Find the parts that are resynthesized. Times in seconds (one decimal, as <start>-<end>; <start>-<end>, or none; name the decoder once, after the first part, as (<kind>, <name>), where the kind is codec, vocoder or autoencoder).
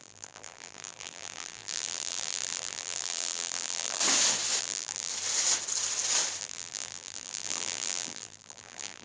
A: 0.0-4.0 (vocoder, BigVGAN v2); 4.6-5.1; 6.4-9.0